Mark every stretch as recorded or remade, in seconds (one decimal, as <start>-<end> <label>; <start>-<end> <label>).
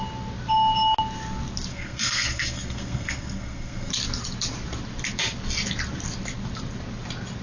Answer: 0.0-1.7 recorded; 1.7-3.9 remade; 3.9-7.4 recorded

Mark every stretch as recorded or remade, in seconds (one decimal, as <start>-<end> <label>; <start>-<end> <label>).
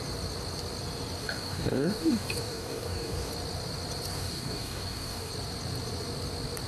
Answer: 0.0-1.2 recorded; 1.2-3.3 remade; 3.3-4.1 recorded; 4.1-5.3 remade; 5.3-6.7 recorded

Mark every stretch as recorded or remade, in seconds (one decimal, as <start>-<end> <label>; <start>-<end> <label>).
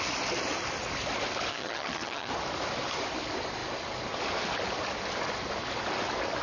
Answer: 0.0-1.5 recorded; 1.5-2.3 remade; 2.3-6.4 recorded